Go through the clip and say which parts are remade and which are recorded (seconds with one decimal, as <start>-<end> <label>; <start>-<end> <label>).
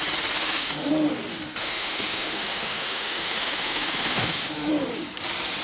0.0-0.4 recorded; 0.4-0.9 remade; 0.9-1.3 recorded; 1.3-4.7 remade; 4.7-5.6 recorded